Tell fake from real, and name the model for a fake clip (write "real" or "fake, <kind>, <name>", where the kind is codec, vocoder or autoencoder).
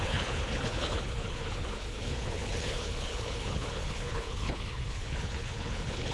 fake, codec, HILCodec